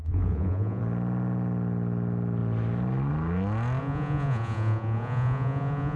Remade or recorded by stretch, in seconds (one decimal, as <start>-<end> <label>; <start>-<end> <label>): 0.0-0.8 remade; 0.8-3.8 recorded; 3.8-6.0 remade

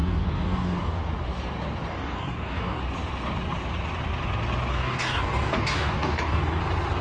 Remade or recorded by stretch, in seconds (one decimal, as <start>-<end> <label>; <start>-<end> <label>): 0.0-1.0 remade; 1.0-1.9 recorded; 1.9-2.8 remade; 2.8-4.7 recorded; 4.7-6.6 remade; 6.6-7.0 recorded

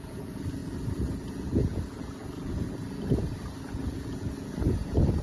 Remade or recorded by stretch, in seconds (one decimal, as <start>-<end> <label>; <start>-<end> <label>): 0.0-5.2 recorded

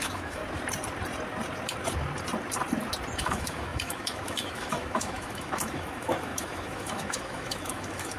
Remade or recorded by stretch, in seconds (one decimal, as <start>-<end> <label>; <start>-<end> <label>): 0.0-0.4 remade; 0.4-3.2 recorded; 3.2-8.2 remade

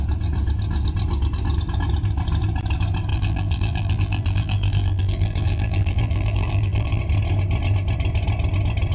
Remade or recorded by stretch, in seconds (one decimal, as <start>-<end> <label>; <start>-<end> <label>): 0.0-3.1 recorded; 3.1-7.0 remade; 7.0-8.9 recorded

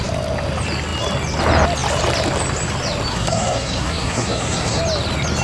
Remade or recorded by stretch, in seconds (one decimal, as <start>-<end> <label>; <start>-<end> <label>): 0.0-3.1 recorded; 3.1-4.8 remade; 4.8-5.4 recorded

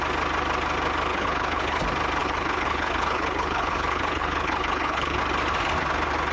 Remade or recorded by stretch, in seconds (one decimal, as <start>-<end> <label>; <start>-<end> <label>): 0.0-1.1 recorded; 1.1-1.8 remade; 1.8-2.2 recorded; 2.2-5.2 remade; 5.2-6.3 recorded

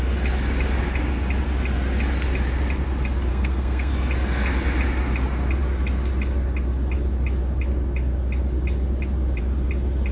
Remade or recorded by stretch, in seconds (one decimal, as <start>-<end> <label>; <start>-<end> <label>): 0.0-3.3 recorded; 3.3-3.9 remade; 3.9-10.1 recorded